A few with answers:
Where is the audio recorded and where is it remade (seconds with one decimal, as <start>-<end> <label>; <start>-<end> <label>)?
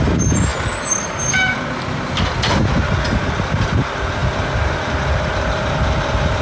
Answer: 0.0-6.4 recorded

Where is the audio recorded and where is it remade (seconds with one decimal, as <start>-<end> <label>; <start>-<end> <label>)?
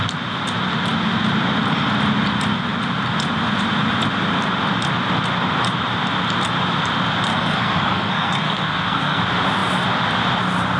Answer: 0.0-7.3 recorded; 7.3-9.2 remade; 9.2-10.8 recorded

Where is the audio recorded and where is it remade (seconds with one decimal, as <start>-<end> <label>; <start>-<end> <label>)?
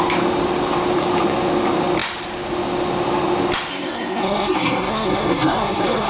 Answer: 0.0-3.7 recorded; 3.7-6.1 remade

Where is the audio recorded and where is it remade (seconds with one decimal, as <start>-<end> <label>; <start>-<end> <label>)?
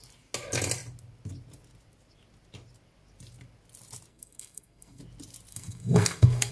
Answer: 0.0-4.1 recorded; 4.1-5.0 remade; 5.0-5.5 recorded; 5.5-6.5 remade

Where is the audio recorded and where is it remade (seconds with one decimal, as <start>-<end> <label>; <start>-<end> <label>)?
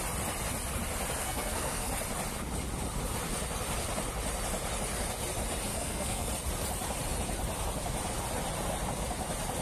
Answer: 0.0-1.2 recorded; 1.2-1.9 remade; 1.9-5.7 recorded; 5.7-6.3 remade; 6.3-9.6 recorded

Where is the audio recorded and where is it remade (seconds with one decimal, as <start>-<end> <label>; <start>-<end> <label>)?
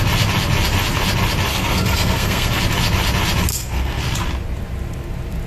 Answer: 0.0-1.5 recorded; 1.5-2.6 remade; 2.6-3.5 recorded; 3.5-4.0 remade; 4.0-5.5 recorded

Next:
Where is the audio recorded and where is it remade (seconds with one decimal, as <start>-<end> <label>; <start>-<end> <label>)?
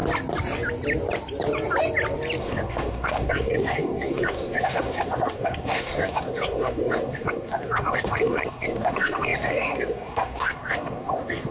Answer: 0.0-2.4 recorded; 2.4-11.5 remade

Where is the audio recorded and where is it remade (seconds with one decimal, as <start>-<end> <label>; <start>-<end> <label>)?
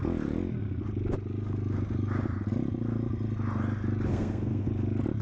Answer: 0.0-4.1 recorded; 4.1-4.7 remade; 4.7-5.2 recorded